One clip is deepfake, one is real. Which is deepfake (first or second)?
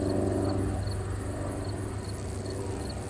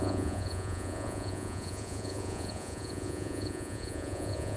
second